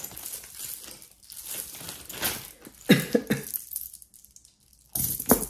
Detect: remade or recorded recorded